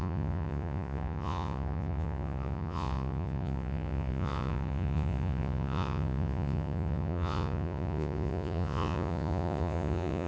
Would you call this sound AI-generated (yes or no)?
yes